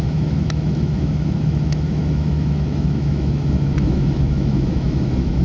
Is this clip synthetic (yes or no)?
yes